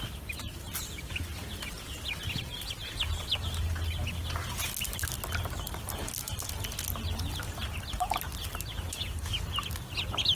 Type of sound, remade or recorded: recorded